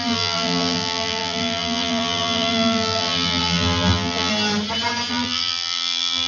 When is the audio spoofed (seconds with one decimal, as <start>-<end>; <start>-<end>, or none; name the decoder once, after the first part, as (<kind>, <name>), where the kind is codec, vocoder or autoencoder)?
0.0-4.3 (vocoder, BigVGAN v2); 5.1-6.3